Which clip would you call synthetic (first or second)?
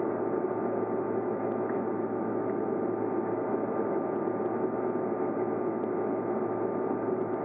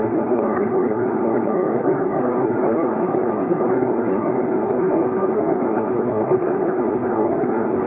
second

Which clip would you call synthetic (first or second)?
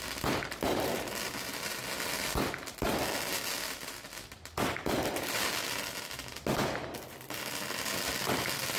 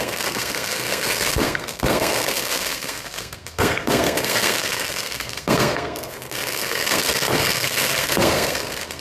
second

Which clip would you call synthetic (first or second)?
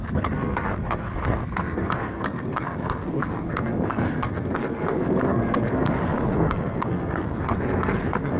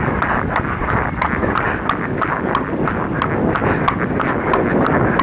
first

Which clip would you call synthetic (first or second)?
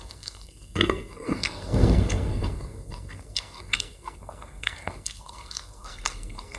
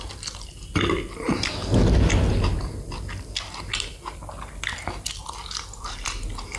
first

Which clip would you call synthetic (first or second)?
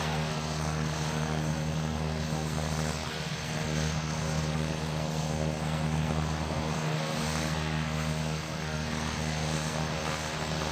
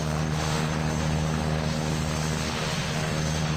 first